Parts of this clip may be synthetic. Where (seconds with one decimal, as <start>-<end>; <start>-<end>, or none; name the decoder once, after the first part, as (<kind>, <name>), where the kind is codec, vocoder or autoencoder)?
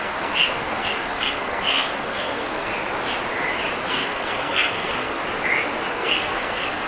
0.0-2.7 (codec, SNAC); 3.9-5.2; 5.9-6.9